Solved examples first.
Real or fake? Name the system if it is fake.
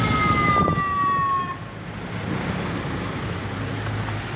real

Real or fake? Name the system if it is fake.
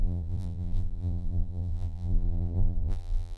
fake, vocoder, BigVGAN v2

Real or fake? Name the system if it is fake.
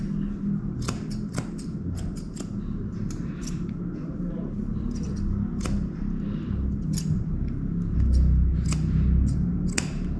real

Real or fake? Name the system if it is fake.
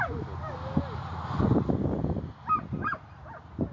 real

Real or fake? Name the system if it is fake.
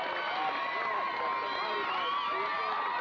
real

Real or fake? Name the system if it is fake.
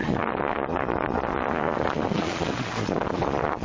fake, vocoder, Vocos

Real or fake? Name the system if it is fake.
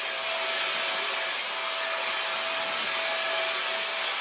real